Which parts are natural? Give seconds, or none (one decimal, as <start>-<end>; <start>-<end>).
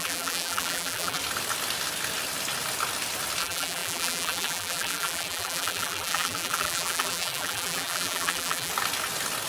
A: 1.2-3.4; 8.7-9.5